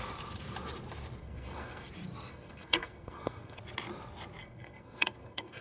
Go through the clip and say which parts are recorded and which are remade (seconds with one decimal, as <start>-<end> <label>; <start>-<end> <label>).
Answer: 0.0-1.2 recorded; 1.2-1.9 remade; 1.9-2.3 recorded; 2.3-3.6 remade; 3.6-4.4 recorded; 4.4-5.6 remade